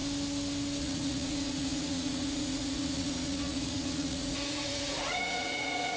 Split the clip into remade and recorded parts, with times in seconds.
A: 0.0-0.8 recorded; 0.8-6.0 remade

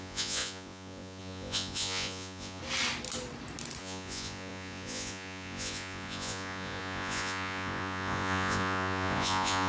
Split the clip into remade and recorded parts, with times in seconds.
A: 0.0-2.6 remade; 2.6-3.8 recorded; 3.8-9.7 remade